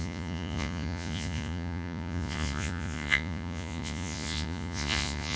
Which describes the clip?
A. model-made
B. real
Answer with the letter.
A